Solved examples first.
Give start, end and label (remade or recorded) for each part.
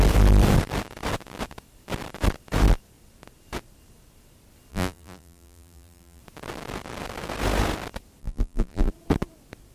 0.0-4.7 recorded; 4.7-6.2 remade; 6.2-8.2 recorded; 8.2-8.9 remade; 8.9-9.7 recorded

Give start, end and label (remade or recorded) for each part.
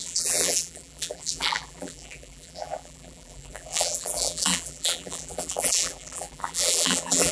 0.0-7.3 remade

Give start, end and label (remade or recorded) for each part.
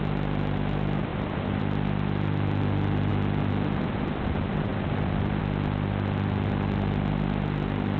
0.0-4.7 recorded; 4.7-5.4 remade; 5.4-8.0 recorded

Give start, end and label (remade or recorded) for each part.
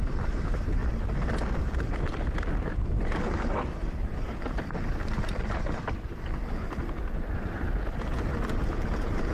0.0-0.8 remade; 0.8-1.5 recorded; 1.5-9.3 remade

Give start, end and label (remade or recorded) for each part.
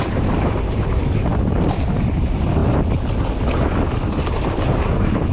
0.0-2.6 remade; 2.6-4.2 recorded; 4.2-5.3 remade